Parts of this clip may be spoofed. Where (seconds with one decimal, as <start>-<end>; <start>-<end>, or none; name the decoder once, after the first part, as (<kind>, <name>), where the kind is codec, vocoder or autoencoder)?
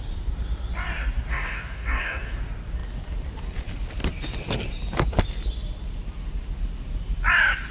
1.3-2.4 (codec, DAC)